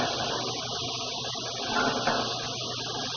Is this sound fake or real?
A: real